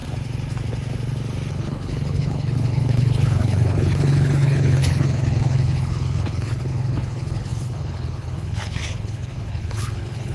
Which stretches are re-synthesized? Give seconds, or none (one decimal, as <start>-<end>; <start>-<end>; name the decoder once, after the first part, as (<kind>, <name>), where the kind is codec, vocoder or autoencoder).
1.5-10.3 (codec, HILCodec)